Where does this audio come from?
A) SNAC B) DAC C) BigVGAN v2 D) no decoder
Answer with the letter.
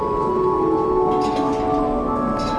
D